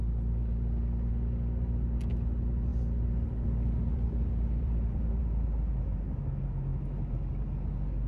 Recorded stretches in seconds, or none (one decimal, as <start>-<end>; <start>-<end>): 0.0-2.7; 5.2-8.1